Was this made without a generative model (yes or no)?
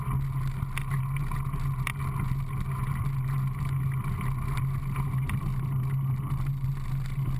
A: yes